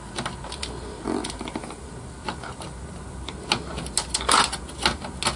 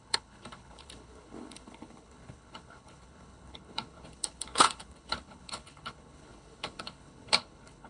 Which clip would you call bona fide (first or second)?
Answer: first